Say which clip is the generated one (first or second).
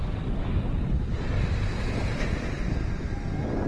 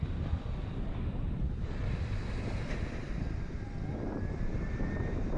second